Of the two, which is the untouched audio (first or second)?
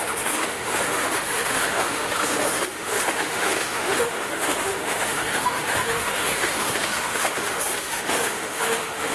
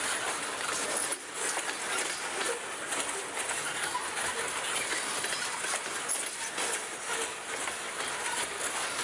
second